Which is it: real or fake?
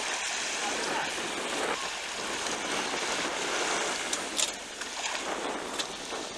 real